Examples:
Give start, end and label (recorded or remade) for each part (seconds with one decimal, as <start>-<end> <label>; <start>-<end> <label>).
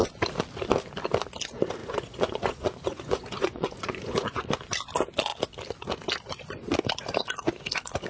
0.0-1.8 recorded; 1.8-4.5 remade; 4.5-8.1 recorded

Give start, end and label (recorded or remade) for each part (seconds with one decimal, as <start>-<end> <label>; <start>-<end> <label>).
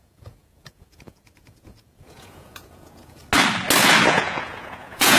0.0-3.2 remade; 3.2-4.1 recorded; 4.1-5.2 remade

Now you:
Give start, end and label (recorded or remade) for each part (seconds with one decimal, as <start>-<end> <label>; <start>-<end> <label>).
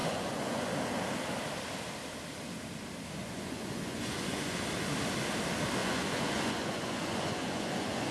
0.0-0.7 remade; 0.7-3.2 recorded; 3.2-4.6 remade; 4.6-5.8 recorded; 5.8-8.1 remade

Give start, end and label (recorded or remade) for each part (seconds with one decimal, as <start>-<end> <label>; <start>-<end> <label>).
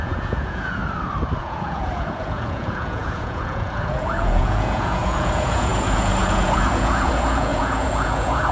0.0-0.8 remade; 0.8-1.4 recorded; 1.4-8.5 remade